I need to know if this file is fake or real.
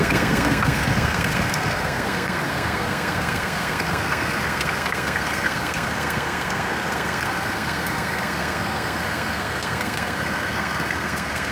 fake